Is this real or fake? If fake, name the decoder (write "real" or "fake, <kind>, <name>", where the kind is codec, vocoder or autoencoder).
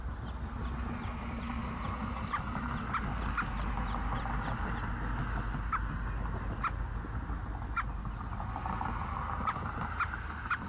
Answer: real